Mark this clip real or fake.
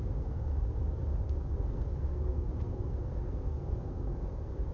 fake